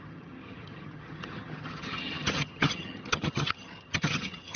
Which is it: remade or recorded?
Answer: remade